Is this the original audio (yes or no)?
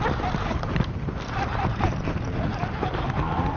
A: yes